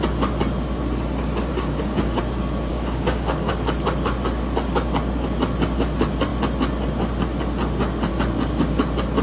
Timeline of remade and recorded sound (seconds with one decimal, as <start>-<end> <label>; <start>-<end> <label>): 0.0-1.5 recorded; 1.5-2.2 remade; 2.2-2.7 recorded; 2.7-3.5 remade; 3.5-9.2 recorded